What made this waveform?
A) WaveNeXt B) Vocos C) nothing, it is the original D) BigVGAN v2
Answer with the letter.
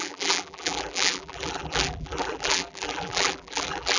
D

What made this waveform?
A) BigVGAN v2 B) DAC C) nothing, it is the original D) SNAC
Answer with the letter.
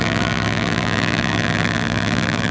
A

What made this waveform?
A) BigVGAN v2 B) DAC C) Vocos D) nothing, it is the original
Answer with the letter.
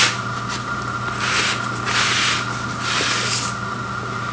D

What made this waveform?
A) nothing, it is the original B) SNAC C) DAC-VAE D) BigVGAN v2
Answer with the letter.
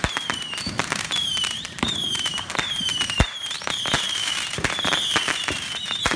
D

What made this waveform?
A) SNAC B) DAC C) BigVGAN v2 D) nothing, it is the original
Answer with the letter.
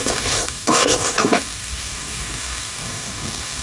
B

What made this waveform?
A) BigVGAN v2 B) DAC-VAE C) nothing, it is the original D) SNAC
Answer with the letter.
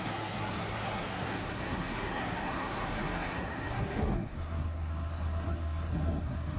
D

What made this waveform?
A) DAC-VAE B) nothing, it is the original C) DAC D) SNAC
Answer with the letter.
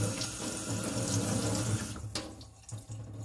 B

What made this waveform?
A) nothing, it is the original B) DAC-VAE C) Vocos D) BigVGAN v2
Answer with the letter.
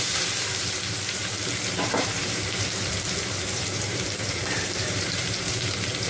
D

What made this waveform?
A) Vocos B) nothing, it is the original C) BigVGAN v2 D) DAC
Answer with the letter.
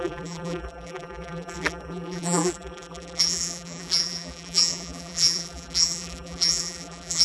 C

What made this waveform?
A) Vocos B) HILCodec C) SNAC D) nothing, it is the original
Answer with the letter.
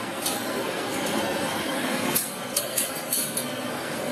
C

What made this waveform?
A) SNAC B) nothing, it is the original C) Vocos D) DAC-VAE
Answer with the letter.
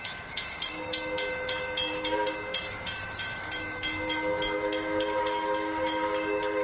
D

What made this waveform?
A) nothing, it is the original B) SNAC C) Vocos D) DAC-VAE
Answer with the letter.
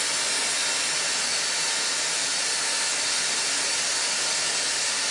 A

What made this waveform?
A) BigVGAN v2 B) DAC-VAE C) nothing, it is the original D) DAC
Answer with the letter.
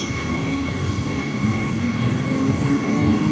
D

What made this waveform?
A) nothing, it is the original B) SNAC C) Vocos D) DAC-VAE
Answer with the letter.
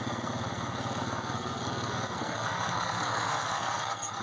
B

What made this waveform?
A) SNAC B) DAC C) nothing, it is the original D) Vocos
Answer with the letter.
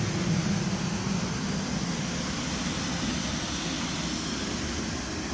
C